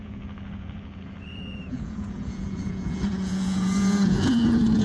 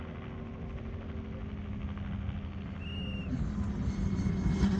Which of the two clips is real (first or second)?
second